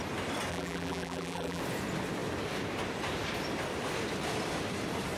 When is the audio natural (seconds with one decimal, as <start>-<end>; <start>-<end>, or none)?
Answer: 0.0-0.5; 1.6-5.2